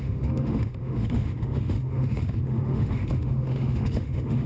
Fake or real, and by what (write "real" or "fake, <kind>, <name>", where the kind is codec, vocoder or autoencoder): fake, autoencoder, DAC-VAE